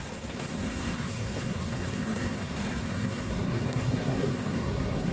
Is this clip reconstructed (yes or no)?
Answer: yes